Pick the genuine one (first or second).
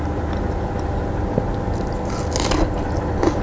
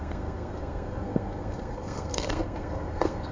first